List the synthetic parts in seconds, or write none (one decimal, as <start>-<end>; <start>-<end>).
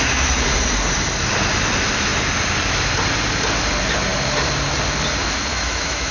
5.5-6.1